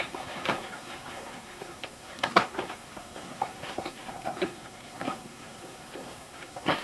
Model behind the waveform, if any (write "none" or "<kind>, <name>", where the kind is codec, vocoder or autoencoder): codec, SNAC